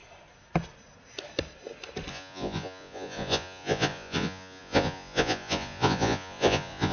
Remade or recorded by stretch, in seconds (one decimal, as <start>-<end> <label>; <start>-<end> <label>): 0.0-2.1 recorded; 2.1-6.9 remade